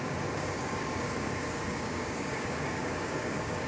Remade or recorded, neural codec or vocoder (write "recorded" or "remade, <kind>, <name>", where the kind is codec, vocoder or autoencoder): remade, codec, DAC